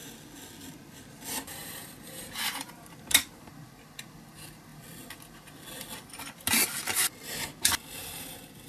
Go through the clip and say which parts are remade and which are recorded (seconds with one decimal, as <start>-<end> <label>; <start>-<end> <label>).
0.0-1.6 recorded; 1.6-3.5 remade; 3.5-8.7 recorded